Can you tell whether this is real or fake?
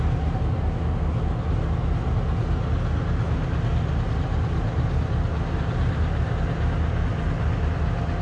real